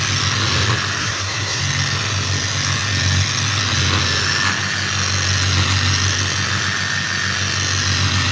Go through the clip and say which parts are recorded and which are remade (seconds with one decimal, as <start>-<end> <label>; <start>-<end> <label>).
0.0-1.0 recorded; 1.0-1.6 remade; 1.6-8.3 recorded